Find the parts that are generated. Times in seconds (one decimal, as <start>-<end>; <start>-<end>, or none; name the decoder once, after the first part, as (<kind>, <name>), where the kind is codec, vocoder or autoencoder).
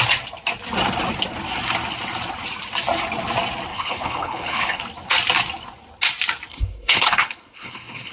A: 3.7-4.8 (codec, HILCodec); 6.5-8.1